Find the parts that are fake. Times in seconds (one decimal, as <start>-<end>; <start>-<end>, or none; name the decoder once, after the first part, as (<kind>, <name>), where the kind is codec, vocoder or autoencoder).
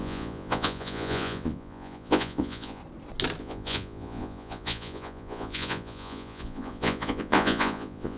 0.0-2.8 (vocoder, Vocos); 3.4-8.2